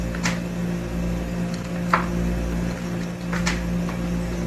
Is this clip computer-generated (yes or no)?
no